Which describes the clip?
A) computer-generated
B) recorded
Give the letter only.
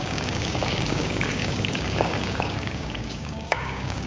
A